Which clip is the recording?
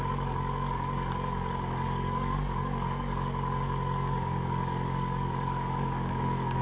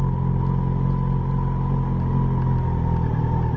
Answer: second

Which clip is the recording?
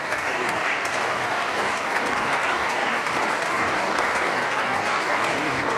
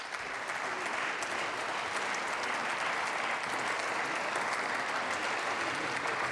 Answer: second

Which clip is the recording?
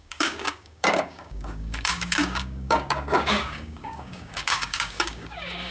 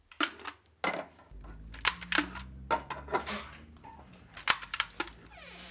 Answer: second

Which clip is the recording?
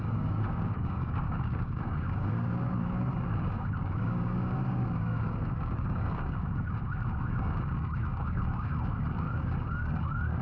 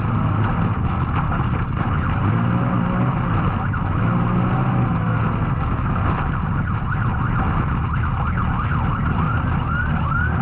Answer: second